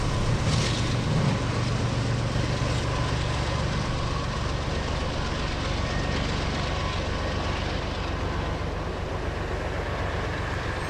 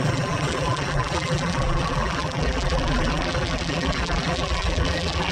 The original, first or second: first